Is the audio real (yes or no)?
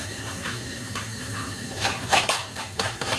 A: no